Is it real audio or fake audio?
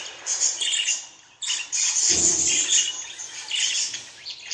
real